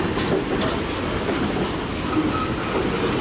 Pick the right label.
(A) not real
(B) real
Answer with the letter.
B